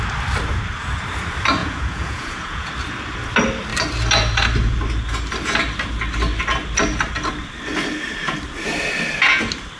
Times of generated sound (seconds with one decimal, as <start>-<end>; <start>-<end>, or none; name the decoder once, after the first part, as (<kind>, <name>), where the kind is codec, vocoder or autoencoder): 1.6-2.7 (vocoder, Vocos)